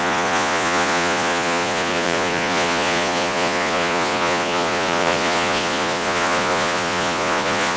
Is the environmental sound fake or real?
fake